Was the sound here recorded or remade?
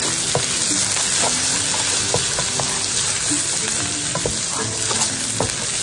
recorded